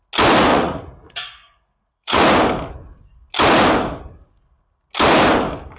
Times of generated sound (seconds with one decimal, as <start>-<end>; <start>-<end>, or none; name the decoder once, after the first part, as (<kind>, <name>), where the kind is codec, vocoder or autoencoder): 0.5-2.2 (vocoder, Vocos)